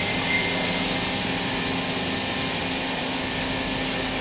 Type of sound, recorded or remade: recorded